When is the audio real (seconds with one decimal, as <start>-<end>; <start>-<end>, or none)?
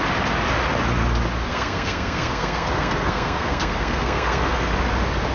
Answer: 0.0-1.5; 4.7-5.3